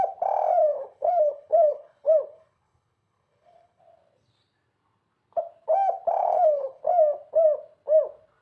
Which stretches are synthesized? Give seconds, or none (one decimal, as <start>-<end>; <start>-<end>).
0.6-3.8; 6.2-6.8